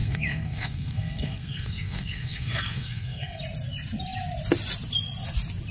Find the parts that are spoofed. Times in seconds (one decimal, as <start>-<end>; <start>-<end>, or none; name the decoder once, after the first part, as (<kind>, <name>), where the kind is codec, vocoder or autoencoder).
0.0-3.4 (codec, SNAC)